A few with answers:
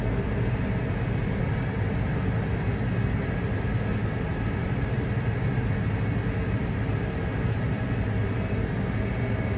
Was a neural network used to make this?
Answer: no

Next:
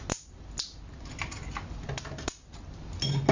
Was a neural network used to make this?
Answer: no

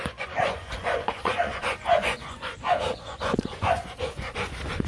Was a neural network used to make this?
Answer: yes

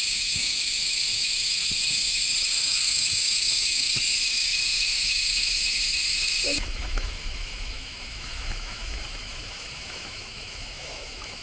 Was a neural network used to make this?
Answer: yes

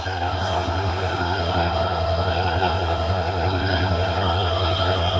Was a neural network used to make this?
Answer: yes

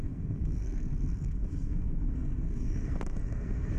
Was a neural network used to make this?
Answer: yes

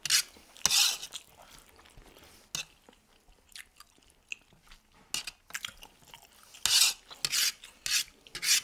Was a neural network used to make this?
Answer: no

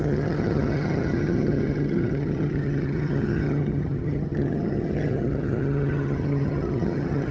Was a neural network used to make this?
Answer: yes